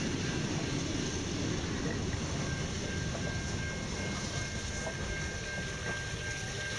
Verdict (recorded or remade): recorded